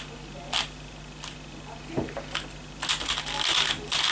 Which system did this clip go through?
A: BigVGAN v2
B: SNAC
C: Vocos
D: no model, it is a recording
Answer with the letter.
D